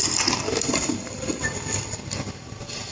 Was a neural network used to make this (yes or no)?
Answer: yes